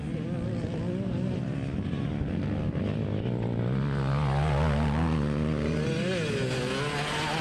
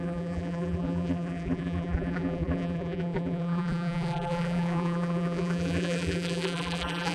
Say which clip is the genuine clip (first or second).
first